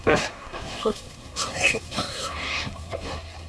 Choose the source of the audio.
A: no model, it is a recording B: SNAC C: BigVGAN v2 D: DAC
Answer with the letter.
B